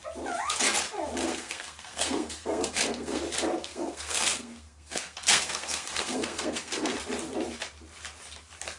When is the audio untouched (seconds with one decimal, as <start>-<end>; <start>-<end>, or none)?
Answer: 0.0-1.2; 3.2-3.6; 7.0-8.8